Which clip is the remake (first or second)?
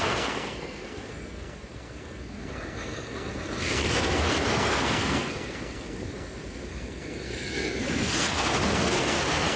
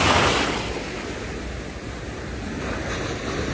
first